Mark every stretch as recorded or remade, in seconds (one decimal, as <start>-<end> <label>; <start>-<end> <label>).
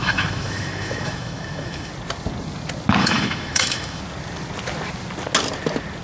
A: 0.0-1.9 remade; 1.9-3.0 recorded; 3.0-4.0 remade; 4.0-6.0 recorded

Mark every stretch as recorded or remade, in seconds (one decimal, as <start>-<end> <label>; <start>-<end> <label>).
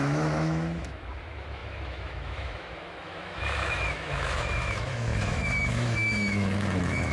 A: 0.0-7.1 remade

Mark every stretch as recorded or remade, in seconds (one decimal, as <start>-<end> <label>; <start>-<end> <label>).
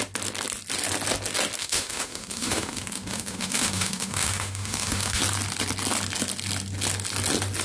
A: 0.0-1.6 recorded; 1.6-5.2 remade; 5.2-7.6 recorded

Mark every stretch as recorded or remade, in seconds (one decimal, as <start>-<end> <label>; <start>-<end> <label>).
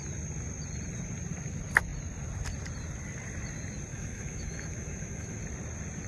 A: 0.0-3.9 recorded; 3.9-5.4 remade; 5.4-6.1 recorded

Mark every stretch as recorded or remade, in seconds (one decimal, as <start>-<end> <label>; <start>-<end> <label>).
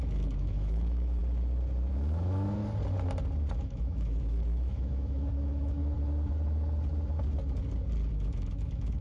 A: 0.0-1.2 remade; 1.2-1.9 recorded; 1.9-2.6 remade; 2.6-3.6 recorded; 3.6-5.8 remade; 5.8-8.1 recorded; 8.1-9.0 remade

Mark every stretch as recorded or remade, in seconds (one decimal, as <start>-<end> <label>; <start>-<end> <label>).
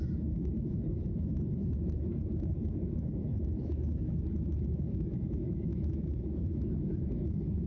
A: 0.0-7.7 remade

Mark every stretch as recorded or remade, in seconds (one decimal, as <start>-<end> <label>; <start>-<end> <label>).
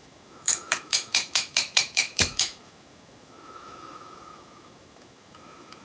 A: 0.0-5.8 remade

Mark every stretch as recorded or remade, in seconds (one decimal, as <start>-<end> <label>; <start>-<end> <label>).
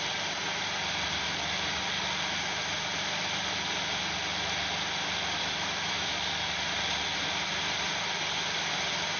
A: 0.0-5.4 recorded; 5.4-6.1 remade; 6.1-9.2 recorded